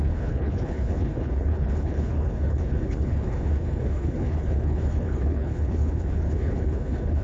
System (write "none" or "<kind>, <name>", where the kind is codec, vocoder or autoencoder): codec, HILCodec